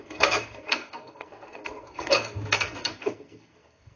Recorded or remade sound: remade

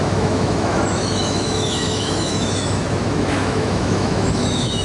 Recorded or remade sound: remade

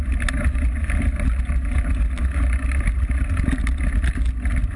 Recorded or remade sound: recorded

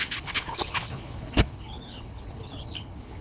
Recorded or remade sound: remade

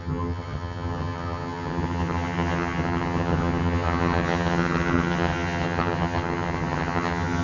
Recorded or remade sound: remade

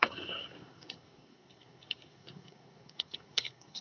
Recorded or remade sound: remade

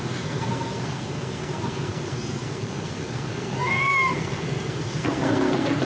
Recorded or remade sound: remade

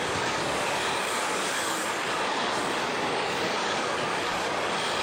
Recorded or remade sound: remade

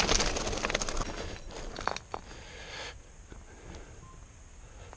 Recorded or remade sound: recorded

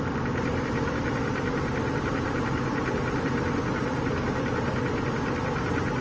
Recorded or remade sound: recorded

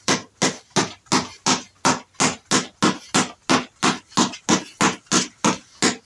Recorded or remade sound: recorded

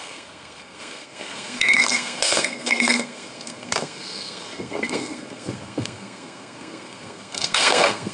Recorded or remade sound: remade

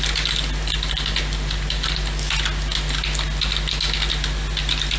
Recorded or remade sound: recorded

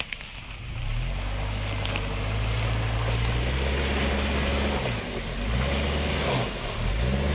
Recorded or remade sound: recorded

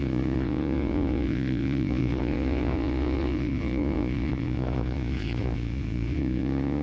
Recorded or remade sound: remade